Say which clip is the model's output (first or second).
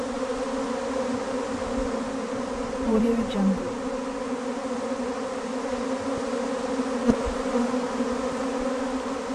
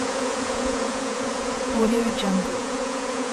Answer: second